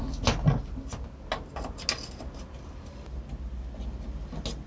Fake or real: real